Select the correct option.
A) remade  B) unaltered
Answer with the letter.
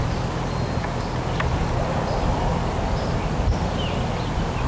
B